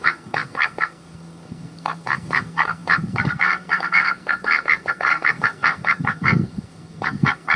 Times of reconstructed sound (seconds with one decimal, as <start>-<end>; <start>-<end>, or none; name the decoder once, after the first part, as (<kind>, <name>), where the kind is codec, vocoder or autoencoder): 0.0-7.6 (codec, SNAC)